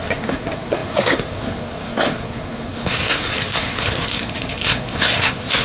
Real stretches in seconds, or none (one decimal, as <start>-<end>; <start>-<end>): none